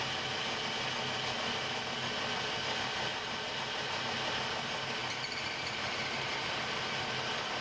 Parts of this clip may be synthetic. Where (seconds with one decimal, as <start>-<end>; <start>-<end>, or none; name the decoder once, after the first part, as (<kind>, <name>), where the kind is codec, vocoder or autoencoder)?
5.0-7.1 (vocoder, BigVGAN v2)